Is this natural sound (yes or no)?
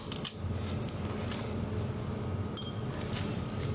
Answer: yes